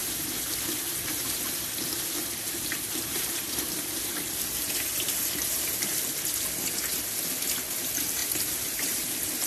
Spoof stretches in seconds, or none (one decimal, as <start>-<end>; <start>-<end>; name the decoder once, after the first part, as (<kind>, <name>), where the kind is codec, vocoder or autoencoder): 0.0-1.4 (vocoder, BigVGAN v2); 2.2-5.9; 8.2-9.1